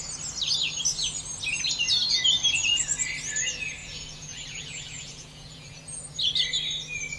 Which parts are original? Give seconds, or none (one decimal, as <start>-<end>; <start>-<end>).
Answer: 0.0-3.8; 6.0-7.2